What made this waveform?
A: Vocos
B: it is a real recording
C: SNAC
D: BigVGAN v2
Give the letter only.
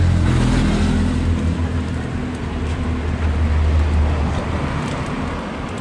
B